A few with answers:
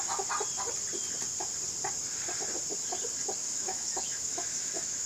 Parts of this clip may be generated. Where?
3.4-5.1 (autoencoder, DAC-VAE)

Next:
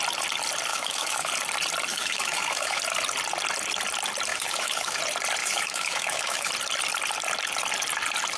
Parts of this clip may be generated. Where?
0.7-1.3 (autoencoder, DAC-VAE); 1.9-2.8; 4.3-5.0; 5.4-6.5

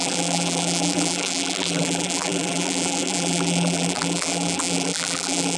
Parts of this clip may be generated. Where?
0.0-5.6 (vocoder, BigVGAN v2)

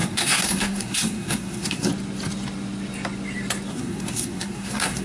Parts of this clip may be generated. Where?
0.0-1.9 (codec, SNAC); 3.7-5.0

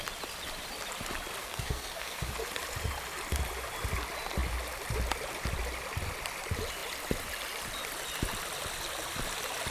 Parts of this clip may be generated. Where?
1.4-2.3 (codec, SNAC)